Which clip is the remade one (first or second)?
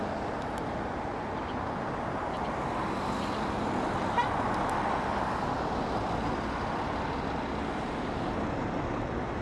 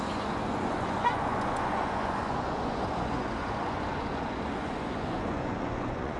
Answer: second